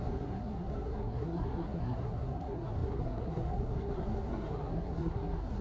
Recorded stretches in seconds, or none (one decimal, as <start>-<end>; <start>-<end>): none